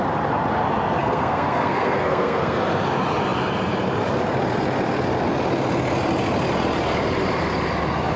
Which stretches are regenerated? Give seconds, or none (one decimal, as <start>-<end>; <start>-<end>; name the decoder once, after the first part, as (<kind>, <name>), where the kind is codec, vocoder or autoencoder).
1.0-2.6 (codec, SNAC)